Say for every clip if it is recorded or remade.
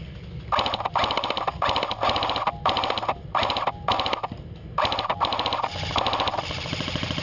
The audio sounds recorded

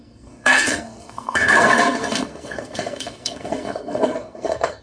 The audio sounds remade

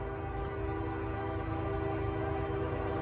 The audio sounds recorded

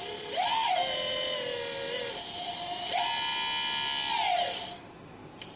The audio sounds recorded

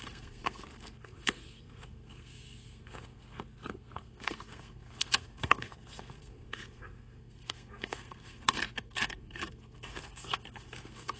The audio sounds remade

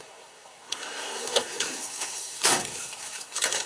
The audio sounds remade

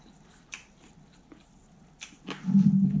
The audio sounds recorded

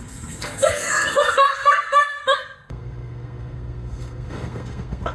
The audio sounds remade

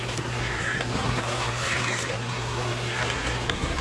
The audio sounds remade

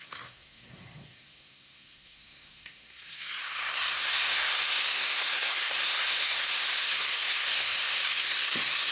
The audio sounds remade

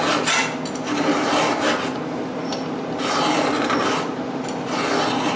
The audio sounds recorded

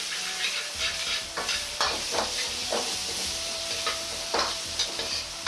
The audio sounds recorded